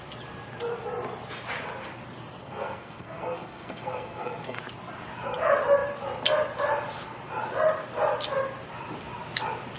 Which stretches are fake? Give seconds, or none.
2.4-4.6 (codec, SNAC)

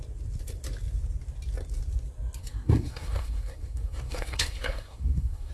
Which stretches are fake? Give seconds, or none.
2.4-5.5 (codec, SNAC)

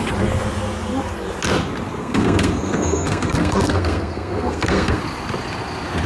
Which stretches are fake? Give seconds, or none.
2.0-5.0 (codec, SNAC)

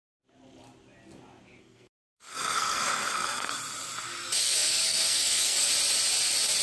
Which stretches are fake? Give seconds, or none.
1.6-3.5 (codec, SNAC); 4.4-5.7

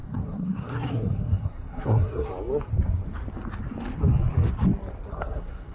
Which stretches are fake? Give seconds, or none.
0.0-2.3 (codec, SNAC); 5.1-5.7

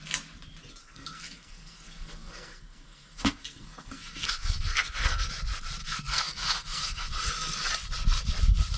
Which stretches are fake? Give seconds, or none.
0.8-5.3 (codec, SNAC); 5.8-7.1

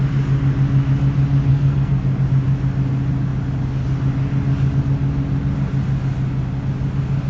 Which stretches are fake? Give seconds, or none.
1.5-2.2 (codec, SNAC)